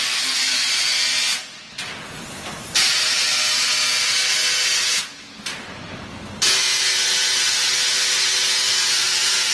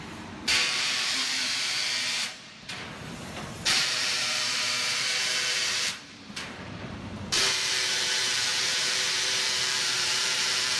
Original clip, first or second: first